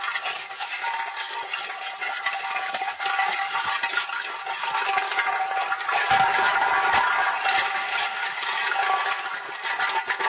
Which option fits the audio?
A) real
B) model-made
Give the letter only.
A